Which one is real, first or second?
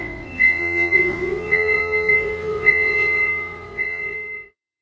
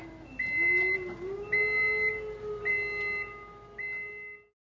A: second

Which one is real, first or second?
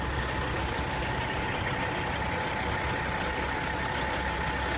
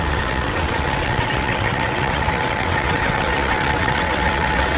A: first